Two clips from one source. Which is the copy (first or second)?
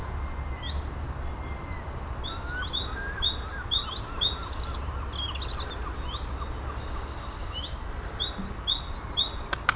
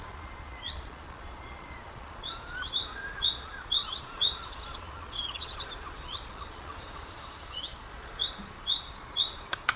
second